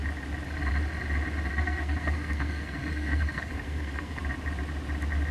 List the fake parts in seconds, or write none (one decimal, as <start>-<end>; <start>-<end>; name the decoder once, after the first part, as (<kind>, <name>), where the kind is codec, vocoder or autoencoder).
1.5-4.2 (codec, SNAC)